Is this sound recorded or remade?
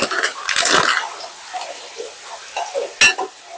recorded